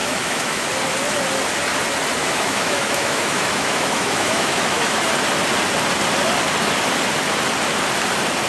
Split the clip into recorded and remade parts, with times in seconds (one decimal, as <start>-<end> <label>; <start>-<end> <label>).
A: 0.0-0.7 remade; 0.7-2.2 recorded; 2.2-5.1 remade; 5.1-8.5 recorded